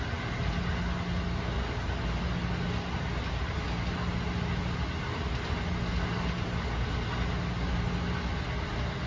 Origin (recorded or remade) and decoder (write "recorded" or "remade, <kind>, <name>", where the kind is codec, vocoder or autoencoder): recorded